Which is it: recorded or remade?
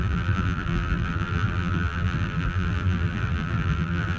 remade